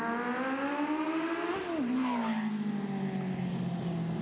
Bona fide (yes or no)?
yes